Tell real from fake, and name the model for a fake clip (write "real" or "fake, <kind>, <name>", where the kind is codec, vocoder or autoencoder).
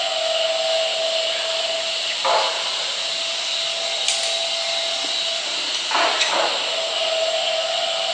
real